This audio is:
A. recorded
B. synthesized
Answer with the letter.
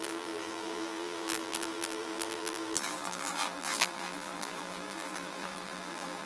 B